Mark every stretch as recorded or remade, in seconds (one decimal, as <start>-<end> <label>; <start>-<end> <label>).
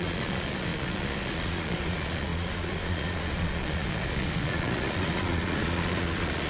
0.0-6.5 remade